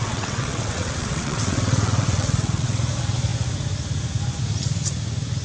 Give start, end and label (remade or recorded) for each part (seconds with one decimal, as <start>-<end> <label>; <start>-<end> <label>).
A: 0.0-2.8 remade; 2.8-5.4 recorded